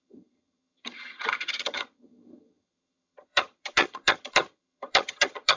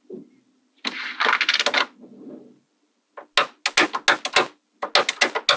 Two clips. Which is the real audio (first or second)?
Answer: second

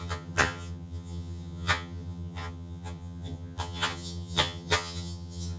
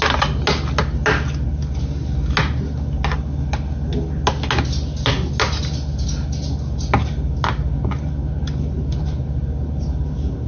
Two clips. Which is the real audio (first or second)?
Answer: second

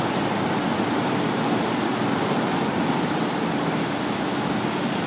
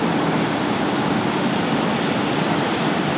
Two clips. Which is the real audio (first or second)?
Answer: first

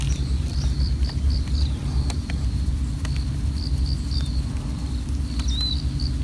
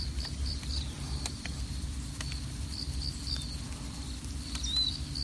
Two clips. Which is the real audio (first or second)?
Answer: first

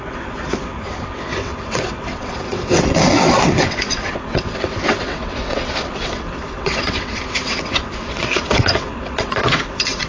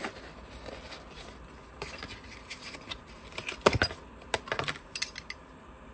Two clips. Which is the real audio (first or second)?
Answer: second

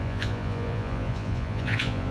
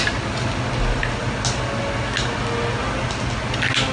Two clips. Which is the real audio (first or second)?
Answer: second